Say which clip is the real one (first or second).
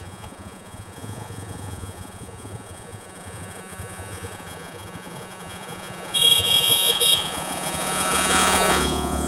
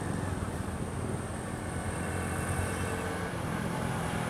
second